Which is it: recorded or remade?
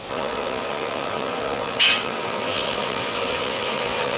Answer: remade